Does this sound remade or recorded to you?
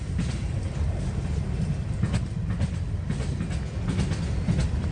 recorded